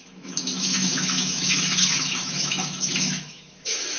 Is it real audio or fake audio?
fake